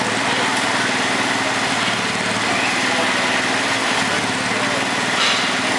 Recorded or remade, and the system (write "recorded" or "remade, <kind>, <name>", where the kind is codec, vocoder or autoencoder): recorded